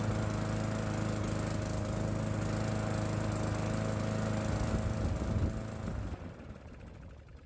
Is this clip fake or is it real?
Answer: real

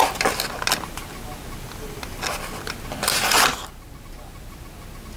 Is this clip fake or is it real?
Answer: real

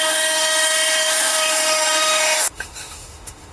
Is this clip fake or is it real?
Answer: fake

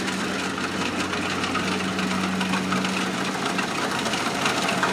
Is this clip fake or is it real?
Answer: real